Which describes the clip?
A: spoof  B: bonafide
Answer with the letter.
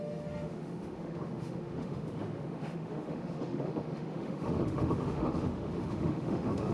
A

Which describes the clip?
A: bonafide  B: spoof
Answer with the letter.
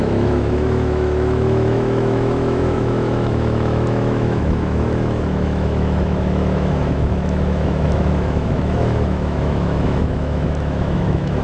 B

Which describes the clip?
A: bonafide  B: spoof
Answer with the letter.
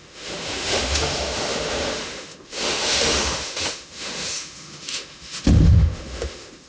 B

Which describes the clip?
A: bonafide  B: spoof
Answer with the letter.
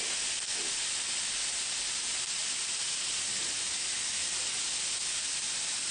A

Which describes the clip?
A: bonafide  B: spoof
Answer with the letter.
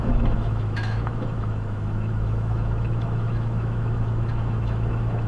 B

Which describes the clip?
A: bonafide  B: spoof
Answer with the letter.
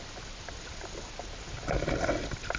A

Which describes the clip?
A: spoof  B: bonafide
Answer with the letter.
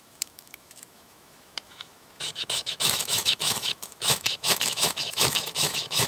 A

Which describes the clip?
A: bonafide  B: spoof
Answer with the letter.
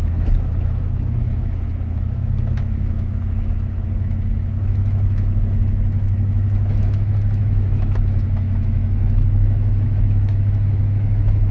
B